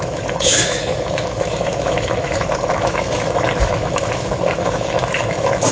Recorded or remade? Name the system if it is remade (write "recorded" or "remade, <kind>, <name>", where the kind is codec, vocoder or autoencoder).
remade, autoencoder, DAC-VAE